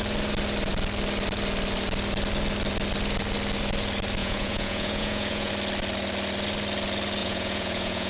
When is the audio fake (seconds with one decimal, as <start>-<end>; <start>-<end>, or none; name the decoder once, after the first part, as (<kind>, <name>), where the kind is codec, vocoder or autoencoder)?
4.2-5.5 (vocoder, Vocos); 7.2-8.1